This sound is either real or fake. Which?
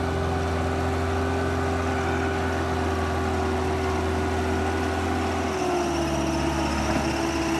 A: real